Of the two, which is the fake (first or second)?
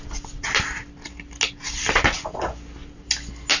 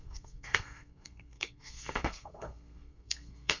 second